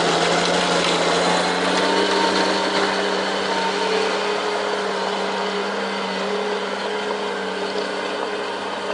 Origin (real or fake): real